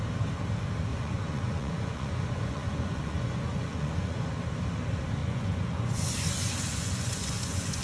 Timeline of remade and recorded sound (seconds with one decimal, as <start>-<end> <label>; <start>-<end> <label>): 0.0-0.9 recorded; 0.9-4.3 remade; 4.3-5.2 recorded; 5.2-7.8 remade